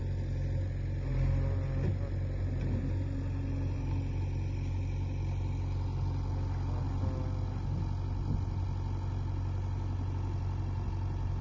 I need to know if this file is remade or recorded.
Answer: recorded